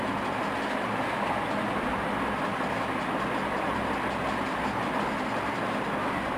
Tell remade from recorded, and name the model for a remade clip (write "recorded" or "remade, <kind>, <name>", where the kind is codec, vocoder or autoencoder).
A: recorded